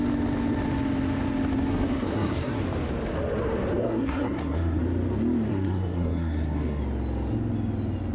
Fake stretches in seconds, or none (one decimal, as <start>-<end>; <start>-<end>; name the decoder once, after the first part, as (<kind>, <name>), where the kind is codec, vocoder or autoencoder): 1.7-2.6 (codec, SNAC); 3.8-4.8; 5.5-6.8

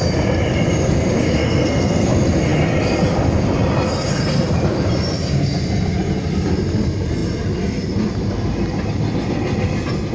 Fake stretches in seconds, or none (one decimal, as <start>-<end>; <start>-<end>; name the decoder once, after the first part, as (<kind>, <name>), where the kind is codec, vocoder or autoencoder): 1.4-2.1 (codec, SNAC)

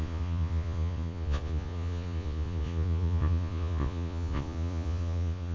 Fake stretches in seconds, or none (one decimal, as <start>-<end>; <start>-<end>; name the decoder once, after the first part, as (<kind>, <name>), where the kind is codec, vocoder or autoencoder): 0.0-5.5 (vocoder, Vocos)

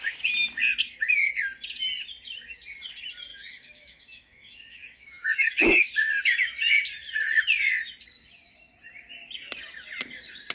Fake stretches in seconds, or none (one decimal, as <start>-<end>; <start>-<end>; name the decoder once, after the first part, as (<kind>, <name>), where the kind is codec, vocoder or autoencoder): 3.3-5.9 (autoencoder, DAC-VAE)

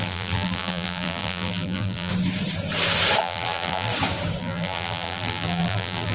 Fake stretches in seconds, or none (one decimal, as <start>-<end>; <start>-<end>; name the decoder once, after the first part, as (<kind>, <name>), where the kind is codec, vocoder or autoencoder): 0.0-2.1 (vocoder, BigVGAN v2); 3.2-3.9; 4.4-6.1

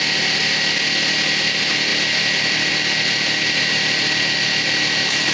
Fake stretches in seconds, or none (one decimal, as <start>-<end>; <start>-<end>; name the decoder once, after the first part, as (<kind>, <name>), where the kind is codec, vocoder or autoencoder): none